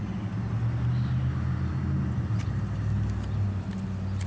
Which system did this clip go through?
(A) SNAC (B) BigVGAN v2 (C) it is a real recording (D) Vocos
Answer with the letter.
C